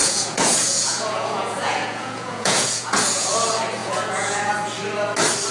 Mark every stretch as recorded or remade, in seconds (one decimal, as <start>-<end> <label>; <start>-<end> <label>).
0.0-3.3 remade; 3.3-3.8 recorded; 3.8-4.5 remade; 4.5-5.5 recorded